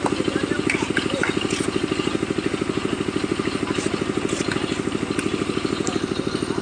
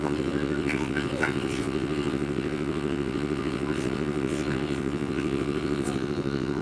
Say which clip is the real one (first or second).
first